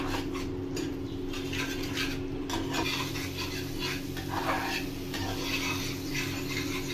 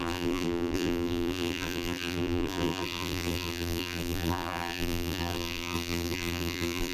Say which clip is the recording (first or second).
first